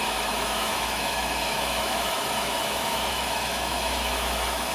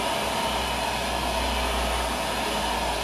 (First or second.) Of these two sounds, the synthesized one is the first